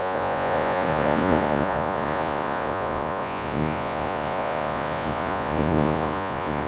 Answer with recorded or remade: remade